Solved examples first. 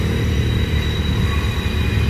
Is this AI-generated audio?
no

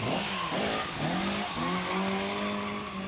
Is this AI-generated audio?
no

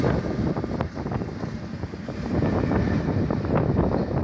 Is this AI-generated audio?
no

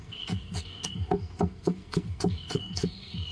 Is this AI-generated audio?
yes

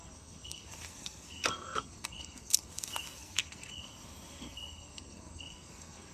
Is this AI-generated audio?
yes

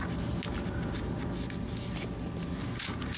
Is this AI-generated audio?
no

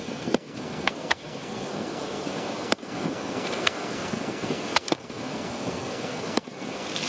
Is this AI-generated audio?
yes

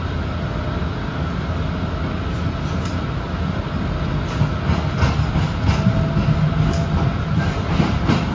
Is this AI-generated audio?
no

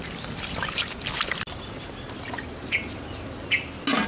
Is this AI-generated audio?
no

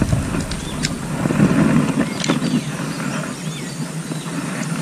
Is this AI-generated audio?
no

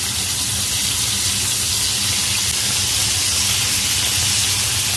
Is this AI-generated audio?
no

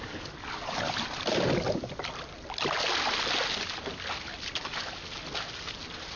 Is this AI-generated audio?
no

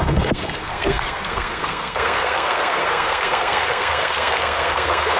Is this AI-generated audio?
yes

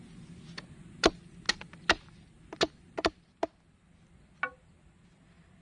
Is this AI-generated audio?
no